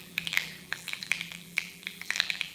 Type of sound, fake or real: fake